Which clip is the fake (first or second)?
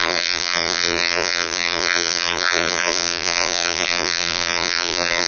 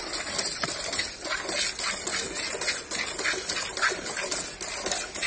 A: first